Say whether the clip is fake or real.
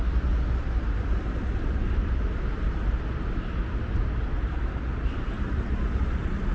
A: real